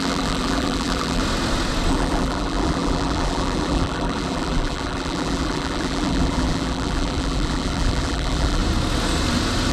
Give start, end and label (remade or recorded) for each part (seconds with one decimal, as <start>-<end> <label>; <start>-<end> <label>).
0.0-1.2 remade; 1.2-1.9 recorded; 1.9-8.6 remade; 8.6-9.7 recorded